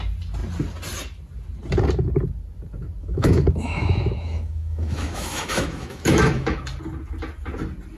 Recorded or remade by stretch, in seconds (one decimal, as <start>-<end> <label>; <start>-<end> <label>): 0.0-3.0 recorded; 3.0-6.6 remade; 6.6-8.0 recorded